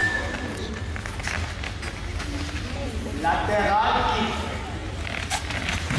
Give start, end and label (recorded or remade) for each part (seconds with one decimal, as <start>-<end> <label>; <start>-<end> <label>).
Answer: 0.0-6.0 recorded